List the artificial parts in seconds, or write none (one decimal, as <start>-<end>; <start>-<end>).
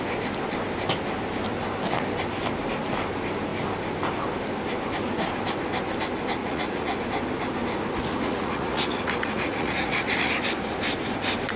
6.4-7.0; 8.1-10.3